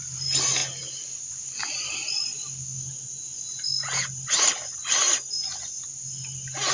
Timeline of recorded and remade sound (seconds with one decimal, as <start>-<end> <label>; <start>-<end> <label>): 0.0-0.6 remade; 0.6-1.3 recorded; 1.3-2.7 remade; 2.7-6.7 recorded